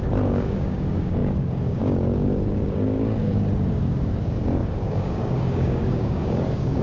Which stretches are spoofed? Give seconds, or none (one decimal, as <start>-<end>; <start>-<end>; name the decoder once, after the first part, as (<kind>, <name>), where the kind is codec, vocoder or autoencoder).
0.0-6.8 (codec, DAC)